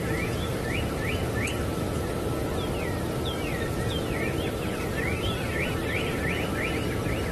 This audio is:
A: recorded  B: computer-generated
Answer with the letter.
A